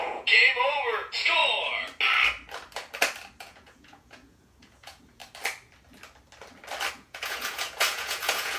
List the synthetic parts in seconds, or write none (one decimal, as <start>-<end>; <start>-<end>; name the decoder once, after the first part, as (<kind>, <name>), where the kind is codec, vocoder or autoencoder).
0.0-1.4 (vocoder, Vocos); 3.4-5.2; 6.9-8.6